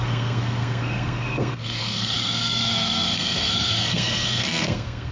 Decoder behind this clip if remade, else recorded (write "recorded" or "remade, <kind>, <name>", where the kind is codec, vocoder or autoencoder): remade, codec, SNAC